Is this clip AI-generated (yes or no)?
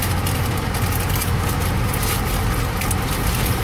no